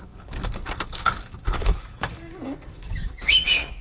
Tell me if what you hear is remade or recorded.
remade